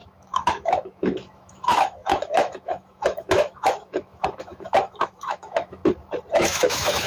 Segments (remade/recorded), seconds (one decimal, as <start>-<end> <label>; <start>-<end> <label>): 0.0-5.8 remade; 5.8-6.3 recorded; 6.3-7.1 remade